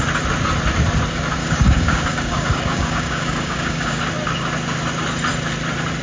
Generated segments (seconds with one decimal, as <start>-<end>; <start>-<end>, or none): 1.4-4.0